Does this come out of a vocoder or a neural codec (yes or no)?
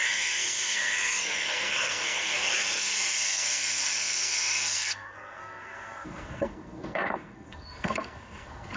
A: yes